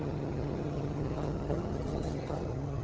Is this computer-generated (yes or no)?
yes